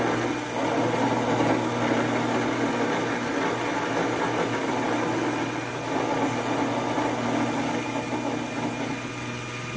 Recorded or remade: recorded